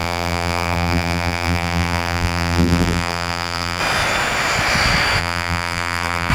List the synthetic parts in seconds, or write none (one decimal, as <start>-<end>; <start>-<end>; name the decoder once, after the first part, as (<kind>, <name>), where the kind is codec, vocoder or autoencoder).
0.0-3.8 (vocoder, BigVGAN v2); 5.2-6.3